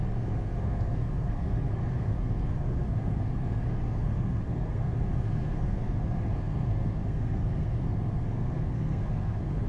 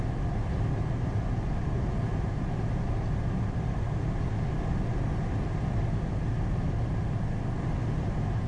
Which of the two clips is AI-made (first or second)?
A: first